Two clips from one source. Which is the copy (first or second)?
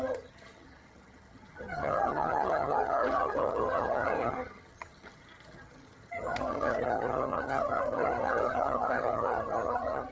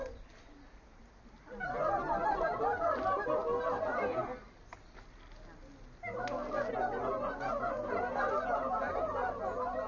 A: first